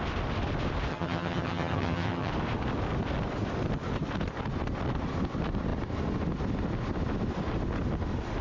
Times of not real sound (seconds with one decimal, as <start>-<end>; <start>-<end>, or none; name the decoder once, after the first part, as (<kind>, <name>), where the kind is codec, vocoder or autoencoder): 0.9-2.3 (vocoder, HiFi-GAN)

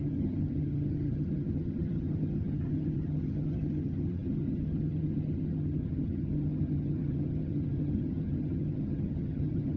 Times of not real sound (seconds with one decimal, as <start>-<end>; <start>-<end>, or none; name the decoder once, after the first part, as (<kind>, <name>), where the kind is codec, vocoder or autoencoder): 0.0-9.8 (vocoder, HiFi-GAN)